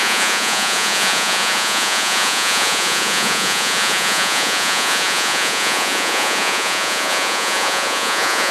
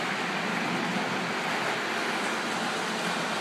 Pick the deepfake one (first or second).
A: first